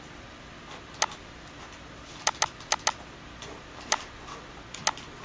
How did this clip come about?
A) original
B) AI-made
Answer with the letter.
A